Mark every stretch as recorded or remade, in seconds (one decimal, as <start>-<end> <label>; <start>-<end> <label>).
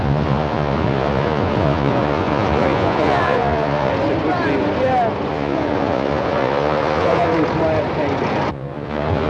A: 0.0-3.9 remade; 3.9-5.3 recorded; 5.3-7.3 remade; 7.3-8.5 recorded; 8.5-9.3 remade